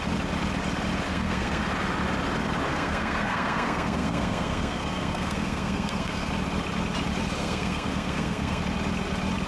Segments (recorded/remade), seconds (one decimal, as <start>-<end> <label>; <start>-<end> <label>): 0.0-1.1 recorded; 1.1-1.6 remade; 1.6-2.7 recorded; 2.7-6.3 remade; 6.3-7.4 recorded; 7.4-8.6 remade; 8.6-9.5 recorded